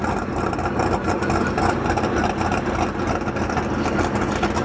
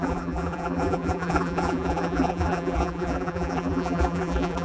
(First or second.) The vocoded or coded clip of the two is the second